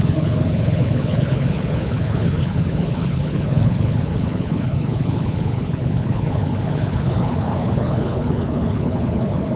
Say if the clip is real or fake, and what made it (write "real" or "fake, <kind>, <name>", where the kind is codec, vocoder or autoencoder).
fake, codec, HILCodec